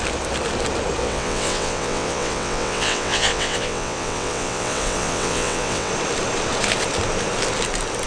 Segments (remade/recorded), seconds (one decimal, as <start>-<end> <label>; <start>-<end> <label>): 0.0-1.0 recorded; 1.0-5.9 remade; 5.9-8.1 recorded